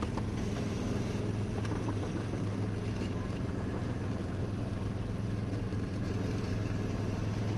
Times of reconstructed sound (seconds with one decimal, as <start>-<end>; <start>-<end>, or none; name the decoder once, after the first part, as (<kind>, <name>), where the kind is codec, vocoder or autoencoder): 0.0-7.6 (vocoder, BigVGAN v2)